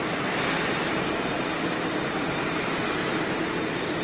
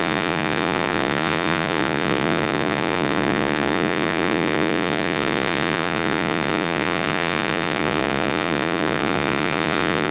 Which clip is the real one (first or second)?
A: first